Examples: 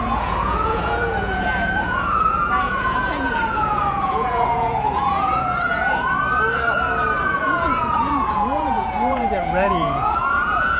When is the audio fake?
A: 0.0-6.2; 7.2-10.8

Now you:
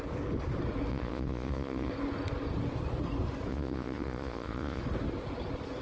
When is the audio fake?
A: 0.9-1.9; 3.5-4.8

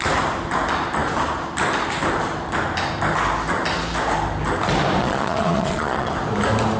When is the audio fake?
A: 5.0-6.1